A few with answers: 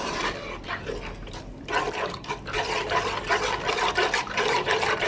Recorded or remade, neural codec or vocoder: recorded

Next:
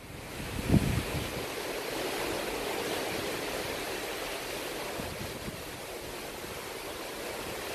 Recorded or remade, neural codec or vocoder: recorded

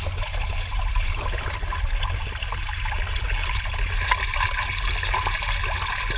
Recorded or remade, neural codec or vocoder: recorded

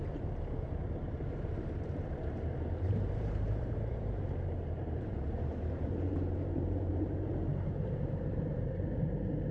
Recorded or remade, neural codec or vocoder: remade, vocoder, BigVGAN v2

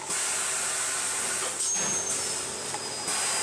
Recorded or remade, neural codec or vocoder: recorded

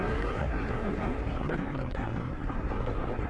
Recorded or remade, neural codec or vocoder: remade, codec, SNAC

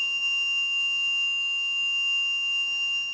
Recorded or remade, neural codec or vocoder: recorded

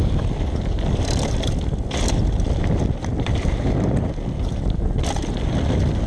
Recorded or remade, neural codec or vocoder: recorded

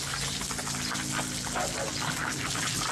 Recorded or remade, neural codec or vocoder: recorded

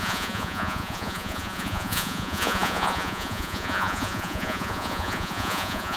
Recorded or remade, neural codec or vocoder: remade, vocoder, Vocos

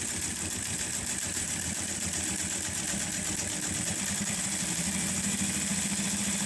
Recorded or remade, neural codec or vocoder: recorded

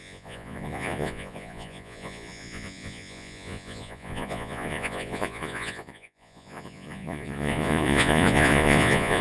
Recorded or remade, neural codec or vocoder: remade, vocoder, Vocos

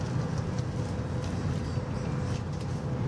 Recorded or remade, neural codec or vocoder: recorded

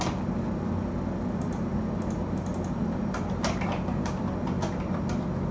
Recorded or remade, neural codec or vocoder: recorded